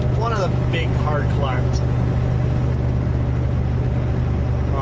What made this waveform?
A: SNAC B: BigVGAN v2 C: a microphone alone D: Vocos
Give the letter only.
C